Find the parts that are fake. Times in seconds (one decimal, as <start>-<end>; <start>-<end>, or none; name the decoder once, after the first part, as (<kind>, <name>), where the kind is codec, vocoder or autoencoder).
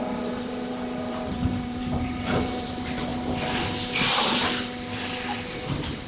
0.0-3.1 (vocoder, BigVGAN v2); 4.2-6.1